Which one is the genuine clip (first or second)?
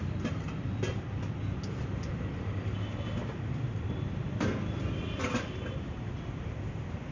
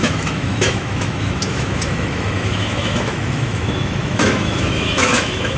first